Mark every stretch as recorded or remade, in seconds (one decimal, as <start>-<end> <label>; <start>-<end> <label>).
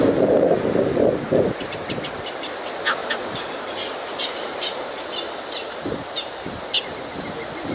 0.0-3.0 recorded; 3.0-5.4 remade; 5.4-7.7 recorded